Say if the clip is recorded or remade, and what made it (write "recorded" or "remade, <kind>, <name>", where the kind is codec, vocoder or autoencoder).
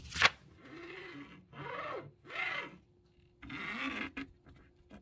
recorded